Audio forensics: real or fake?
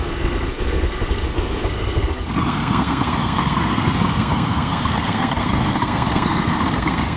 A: fake